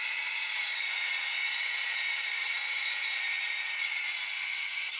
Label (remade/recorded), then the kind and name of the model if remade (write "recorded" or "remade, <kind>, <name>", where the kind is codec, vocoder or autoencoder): remade, vocoder, Vocos